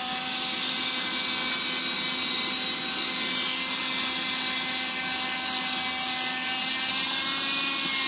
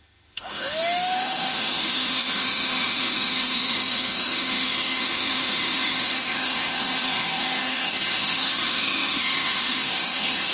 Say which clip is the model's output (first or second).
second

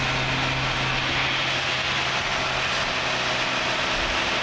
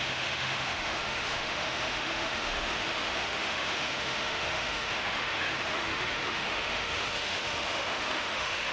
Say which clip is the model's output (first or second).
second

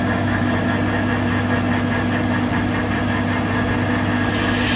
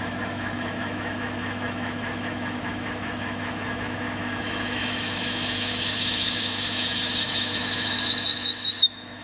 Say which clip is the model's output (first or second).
second